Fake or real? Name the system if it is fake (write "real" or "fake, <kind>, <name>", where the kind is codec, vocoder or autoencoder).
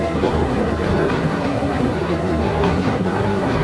fake, codec, SNAC